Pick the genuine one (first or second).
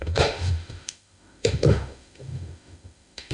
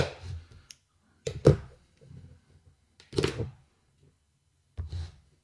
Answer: second